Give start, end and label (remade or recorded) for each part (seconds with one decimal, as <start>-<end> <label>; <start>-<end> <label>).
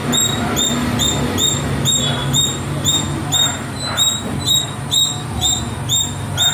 0.0-2.2 recorded; 2.2-4.6 remade; 4.6-6.5 recorded